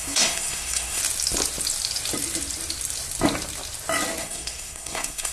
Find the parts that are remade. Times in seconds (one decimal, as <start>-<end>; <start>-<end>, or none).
0.0-1.0; 4.2-5.3